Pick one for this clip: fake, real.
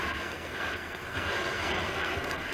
fake